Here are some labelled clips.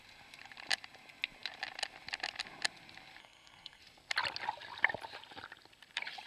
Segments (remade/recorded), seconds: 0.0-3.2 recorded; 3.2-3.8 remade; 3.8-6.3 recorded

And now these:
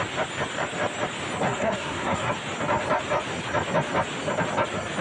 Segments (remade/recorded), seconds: 0.0-1.4 recorded; 1.4-2.3 remade; 2.3-5.0 recorded

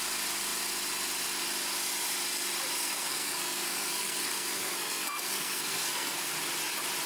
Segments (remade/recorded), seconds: 0.0-2.8 recorded; 2.8-6.3 remade; 6.3-7.1 recorded

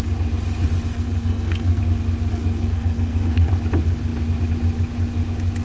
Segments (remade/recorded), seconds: 0.0-0.9 recorded; 0.9-1.8 remade; 1.8-2.3 recorded; 2.3-3.5 remade; 3.5-5.6 recorded

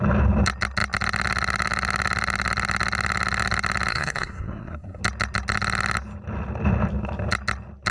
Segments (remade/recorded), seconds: 0.0-3.9 recorded; 3.9-5.0 remade; 5.0-7.9 recorded

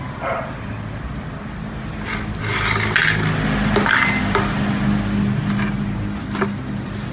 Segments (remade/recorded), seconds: 0.0-7.1 recorded

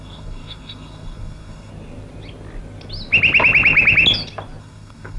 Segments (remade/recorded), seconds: 0.0-1.7 remade; 1.7-4.6 recorded; 4.6-5.2 remade